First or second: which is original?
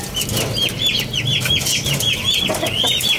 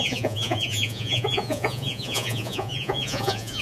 first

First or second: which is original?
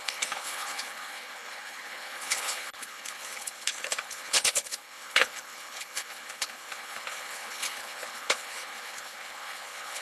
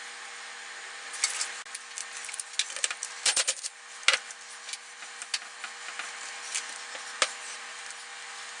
second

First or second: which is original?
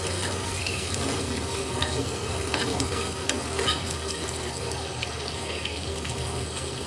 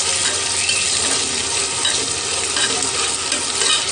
second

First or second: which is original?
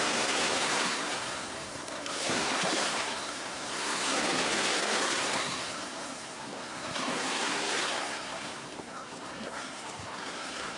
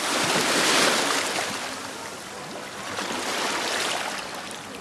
second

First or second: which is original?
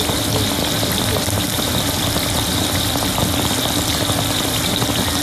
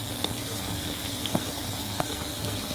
first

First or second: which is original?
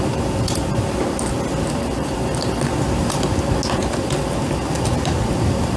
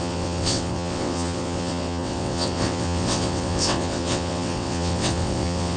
first